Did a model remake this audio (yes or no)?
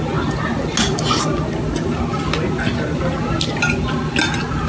no